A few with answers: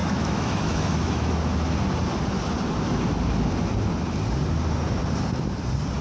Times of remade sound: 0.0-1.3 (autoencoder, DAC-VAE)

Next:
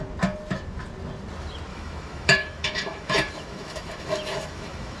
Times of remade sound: 1.7-5.0 (autoencoder, DAC-VAE)

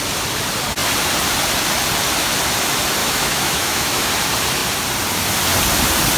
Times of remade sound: 3.0-4.1 (autoencoder, DAC-VAE)

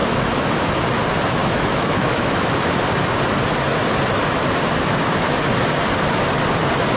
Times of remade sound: 0.0-0.5 (autoencoder, DAC-VAE); 1.4-2.4

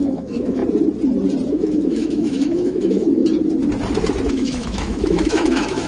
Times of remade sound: 0.0-0.6 (autoencoder, DAC-VAE); 1.5-3.2; 4.3-5.9

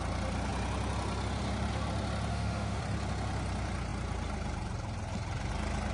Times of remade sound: 2.3-2.8 (autoencoder, DAC-VAE)